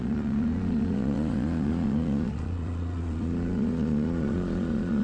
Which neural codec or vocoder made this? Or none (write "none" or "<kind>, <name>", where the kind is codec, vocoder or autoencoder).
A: vocoder, Vocos